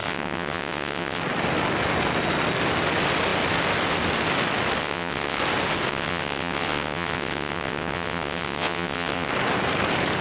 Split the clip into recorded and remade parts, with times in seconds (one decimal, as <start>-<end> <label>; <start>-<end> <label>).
0.0-1.2 remade; 1.2-4.8 recorded; 4.8-5.4 remade; 5.4-5.9 recorded; 5.9-9.3 remade; 9.3-10.2 recorded